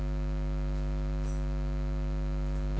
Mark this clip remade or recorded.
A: recorded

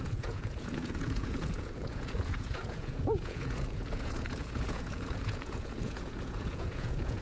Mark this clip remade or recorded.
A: remade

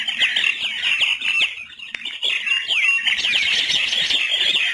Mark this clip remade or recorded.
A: recorded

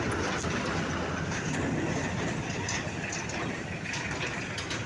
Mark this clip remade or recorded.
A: recorded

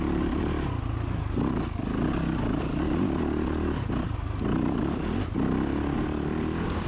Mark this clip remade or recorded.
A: recorded